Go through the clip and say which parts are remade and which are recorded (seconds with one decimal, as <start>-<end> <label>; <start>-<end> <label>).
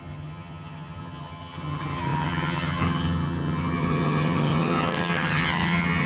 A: 0.0-6.1 remade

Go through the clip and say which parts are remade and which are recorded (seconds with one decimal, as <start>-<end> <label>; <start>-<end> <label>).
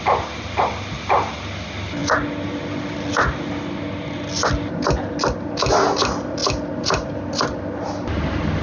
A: 0.0-8.6 recorded